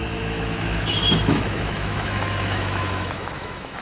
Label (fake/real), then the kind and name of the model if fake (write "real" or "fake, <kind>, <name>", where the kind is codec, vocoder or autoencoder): fake, autoencoder, DAC-VAE